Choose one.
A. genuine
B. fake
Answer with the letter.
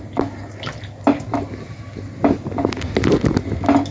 A